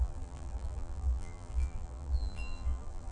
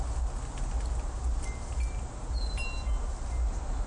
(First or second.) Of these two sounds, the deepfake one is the first